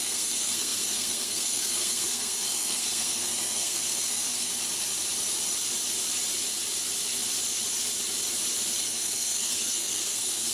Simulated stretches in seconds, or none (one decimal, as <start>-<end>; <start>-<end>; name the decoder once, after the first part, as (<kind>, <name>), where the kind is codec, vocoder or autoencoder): 0.0-4.5 (codec, SNAC); 8.8-10.5

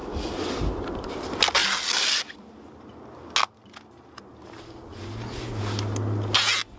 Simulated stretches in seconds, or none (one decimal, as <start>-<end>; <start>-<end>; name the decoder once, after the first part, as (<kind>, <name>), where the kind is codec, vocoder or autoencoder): none

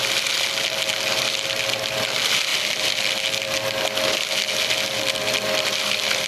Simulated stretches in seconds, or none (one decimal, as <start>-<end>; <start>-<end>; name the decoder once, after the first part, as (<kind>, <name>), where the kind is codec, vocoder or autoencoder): none

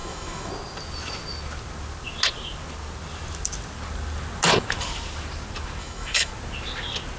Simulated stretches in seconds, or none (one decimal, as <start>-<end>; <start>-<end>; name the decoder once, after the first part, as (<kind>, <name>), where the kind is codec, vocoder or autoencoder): 0.0-0.5 (autoencoder, DAC-VAE); 5.8-6.3

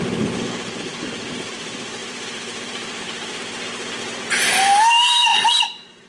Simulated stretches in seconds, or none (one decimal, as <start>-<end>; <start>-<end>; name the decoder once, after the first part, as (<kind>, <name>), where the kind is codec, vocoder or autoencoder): 2.0-3.4 (vocoder, BigVGAN v2); 5.3-6.1

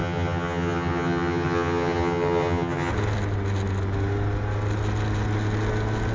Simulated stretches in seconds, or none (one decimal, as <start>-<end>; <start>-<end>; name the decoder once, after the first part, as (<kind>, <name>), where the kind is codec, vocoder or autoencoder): 0.0-2.9 (vocoder, HiFi-GAN)